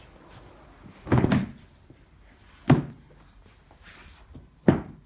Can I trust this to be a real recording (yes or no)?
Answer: yes